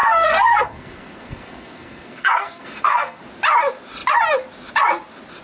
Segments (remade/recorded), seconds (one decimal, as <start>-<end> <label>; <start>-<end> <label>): 0.0-3.2 remade; 3.2-5.4 recorded